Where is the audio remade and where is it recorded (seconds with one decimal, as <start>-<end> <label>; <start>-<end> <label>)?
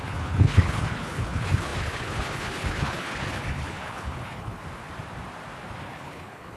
0.0-4.6 remade; 4.6-5.8 recorded; 5.8-6.6 remade